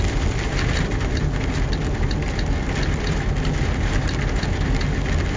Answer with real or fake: real